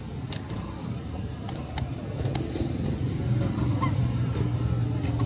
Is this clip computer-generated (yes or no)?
no